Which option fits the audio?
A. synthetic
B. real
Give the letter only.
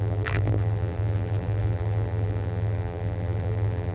A